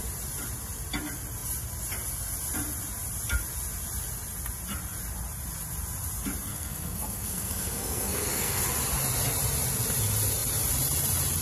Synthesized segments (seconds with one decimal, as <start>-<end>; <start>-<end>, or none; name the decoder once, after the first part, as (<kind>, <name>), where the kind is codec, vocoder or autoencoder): 6.5-8.6 (codec, SNAC)